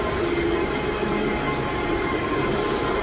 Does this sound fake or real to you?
real